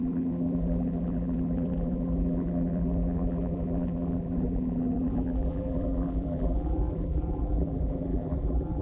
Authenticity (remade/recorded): remade